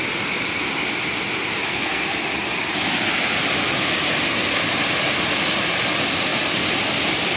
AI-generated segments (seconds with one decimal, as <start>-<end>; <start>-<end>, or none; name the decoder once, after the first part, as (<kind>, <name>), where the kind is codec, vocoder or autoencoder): 1.7-2.2 (codec, SNAC)